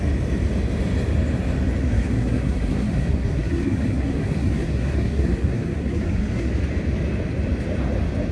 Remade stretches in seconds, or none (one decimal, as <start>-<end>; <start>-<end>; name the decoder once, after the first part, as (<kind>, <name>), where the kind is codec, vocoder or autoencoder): 1.8-6.5 (codec, SNAC)